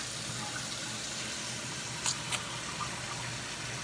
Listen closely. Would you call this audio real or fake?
real